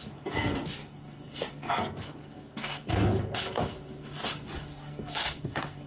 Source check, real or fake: fake